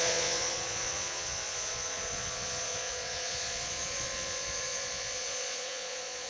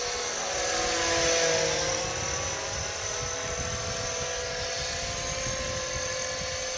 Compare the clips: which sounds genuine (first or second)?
second